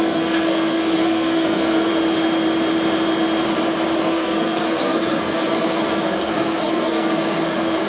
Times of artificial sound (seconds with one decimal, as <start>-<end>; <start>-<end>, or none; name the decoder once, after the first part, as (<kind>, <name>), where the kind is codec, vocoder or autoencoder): 0.0-1.9 (codec, SNAC); 4.0-7.9